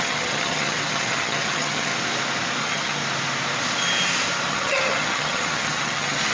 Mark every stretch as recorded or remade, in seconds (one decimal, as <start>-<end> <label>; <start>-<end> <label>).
0.0-1.9 remade; 1.9-2.6 recorded; 2.6-3.0 remade; 3.0-4.5 recorded; 4.5-6.3 remade